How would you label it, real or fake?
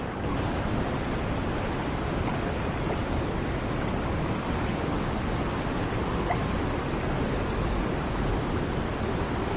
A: real